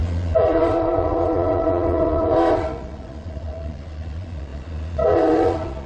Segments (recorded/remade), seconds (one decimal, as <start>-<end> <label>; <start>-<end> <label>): 0.0-5.9 remade